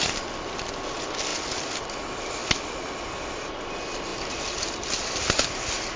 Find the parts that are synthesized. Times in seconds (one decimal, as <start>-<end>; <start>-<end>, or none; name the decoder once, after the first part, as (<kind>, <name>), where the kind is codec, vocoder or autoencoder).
none